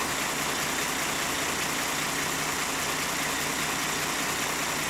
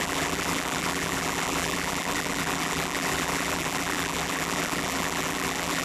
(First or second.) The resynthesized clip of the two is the second